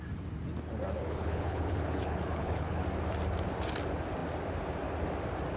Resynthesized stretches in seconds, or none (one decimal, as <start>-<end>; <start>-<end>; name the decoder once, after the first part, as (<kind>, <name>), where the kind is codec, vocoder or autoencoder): 1.0-2.8 (codec, HILCodec)